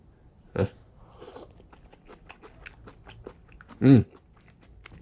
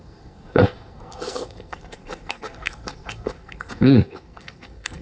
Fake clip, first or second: second